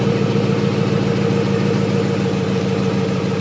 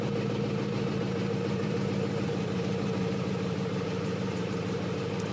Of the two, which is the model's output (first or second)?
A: second